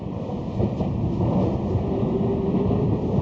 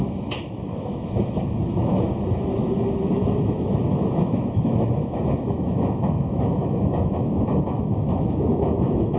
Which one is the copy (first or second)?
second